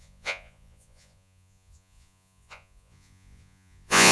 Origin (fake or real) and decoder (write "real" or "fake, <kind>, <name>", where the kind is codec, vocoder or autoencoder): fake, vocoder, Vocos